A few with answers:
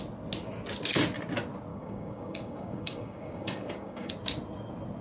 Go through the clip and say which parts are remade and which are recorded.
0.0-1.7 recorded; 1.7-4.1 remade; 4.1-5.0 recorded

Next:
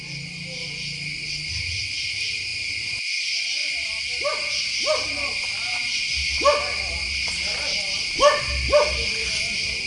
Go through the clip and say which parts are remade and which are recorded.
0.0-9.9 recorded

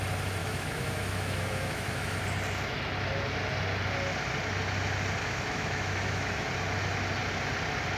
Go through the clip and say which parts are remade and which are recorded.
0.0-0.4 recorded; 0.4-2.2 remade; 2.2-5.2 recorded; 5.2-6.5 remade; 6.5-8.0 recorded

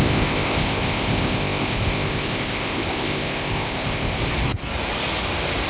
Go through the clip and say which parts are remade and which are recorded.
0.0-4.2 remade; 4.2-5.7 recorded

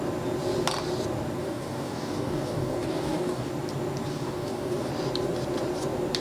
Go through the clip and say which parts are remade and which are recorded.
0.0-1.4 recorded; 1.4-3.5 remade; 3.5-4.1 recorded; 4.1-4.9 remade; 4.9-6.2 recorded